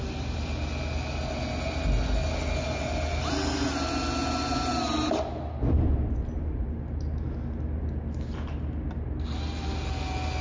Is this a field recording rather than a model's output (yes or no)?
yes